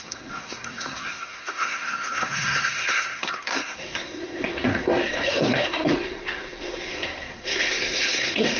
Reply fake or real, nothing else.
fake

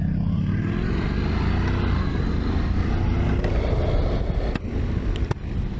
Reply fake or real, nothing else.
real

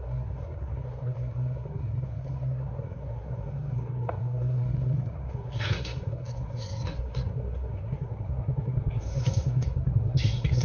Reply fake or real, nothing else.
fake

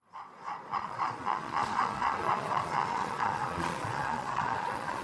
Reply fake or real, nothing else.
fake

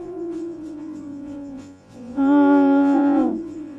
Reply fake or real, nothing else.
fake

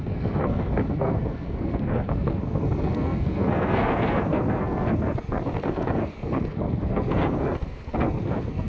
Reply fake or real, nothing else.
fake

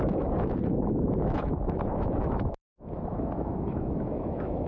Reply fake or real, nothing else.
fake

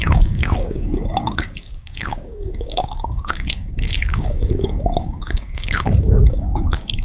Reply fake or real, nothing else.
fake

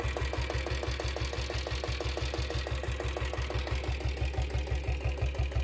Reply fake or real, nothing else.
real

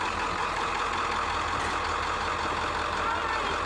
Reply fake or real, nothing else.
real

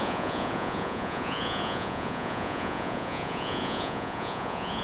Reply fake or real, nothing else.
fake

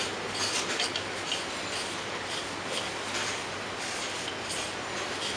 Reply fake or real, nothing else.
real